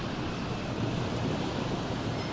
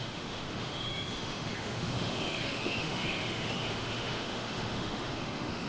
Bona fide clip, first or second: first